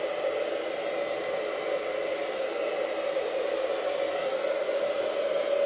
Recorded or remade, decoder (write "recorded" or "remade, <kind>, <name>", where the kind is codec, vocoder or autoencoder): recorded